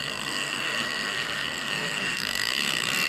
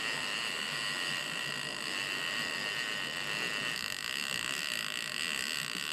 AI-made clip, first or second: first